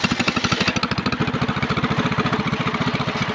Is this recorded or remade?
recorded